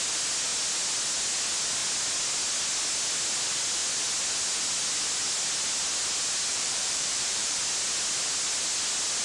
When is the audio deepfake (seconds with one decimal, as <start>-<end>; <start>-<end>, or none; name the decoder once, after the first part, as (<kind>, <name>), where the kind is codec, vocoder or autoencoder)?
6.5-7.6 (vocoder, BigVGAN v2)